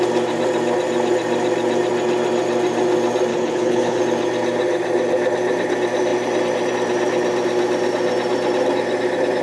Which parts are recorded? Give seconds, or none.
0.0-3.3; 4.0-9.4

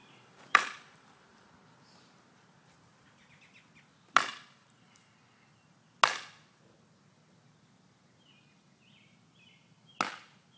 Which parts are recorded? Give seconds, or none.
1.5-4.3; 5.1-10.6

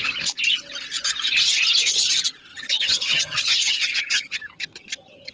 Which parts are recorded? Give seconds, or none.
0.0-2.5